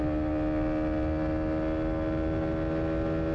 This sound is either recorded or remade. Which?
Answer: recorded